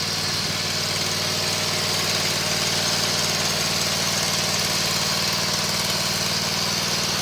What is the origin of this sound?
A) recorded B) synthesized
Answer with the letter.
A